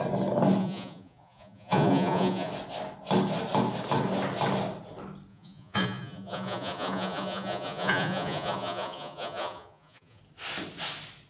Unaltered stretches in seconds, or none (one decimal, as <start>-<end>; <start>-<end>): 0.0-0.6; 2.5-5.3; 10.2-11.3